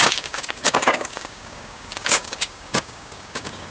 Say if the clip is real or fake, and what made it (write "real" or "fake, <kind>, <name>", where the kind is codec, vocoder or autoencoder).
fake, codec, DAC